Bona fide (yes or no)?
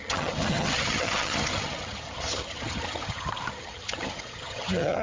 no